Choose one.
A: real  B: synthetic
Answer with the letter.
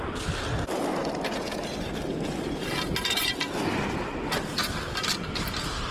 A